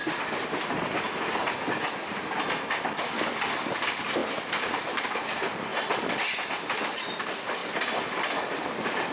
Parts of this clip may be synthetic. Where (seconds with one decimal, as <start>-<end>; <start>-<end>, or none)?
0.0-0.6; 5.7-6.5; 7.6-9.1